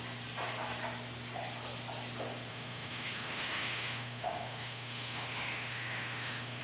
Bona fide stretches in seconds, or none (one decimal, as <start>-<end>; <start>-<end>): 0.0-2.5